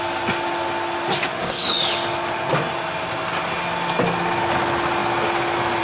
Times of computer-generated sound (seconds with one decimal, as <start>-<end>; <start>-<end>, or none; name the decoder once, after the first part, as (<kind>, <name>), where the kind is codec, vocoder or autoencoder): 1.4-1.9 (codec, DAC)